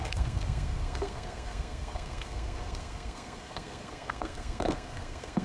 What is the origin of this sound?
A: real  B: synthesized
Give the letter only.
B